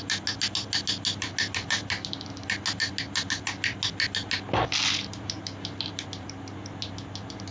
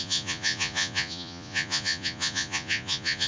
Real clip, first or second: first